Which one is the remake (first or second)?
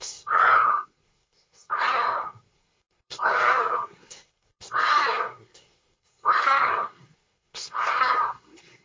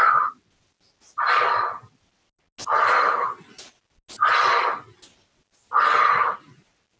first